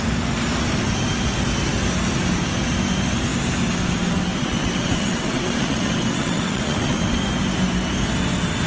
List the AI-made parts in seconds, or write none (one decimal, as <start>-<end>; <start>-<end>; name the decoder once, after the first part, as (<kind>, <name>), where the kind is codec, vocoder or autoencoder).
4.5-7.2 (vocoder, WaveNeXt)